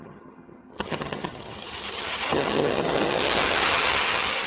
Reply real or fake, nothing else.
fake